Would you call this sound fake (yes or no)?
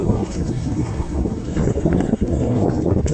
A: yes